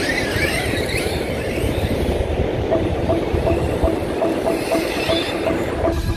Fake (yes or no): yes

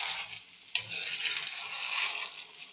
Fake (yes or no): no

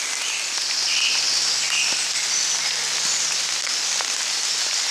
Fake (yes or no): no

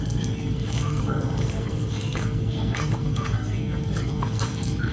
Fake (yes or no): yes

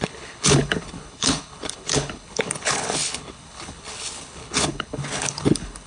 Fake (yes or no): yes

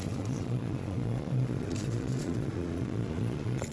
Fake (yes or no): yes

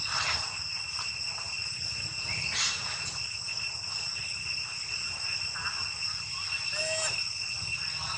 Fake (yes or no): no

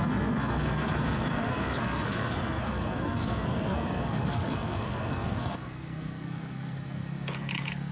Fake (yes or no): yes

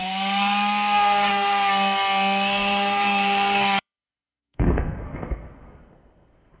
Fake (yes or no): yes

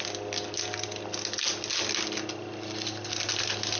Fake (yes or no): no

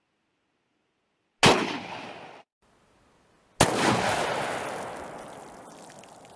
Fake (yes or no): no